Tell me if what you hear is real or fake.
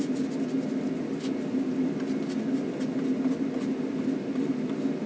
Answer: real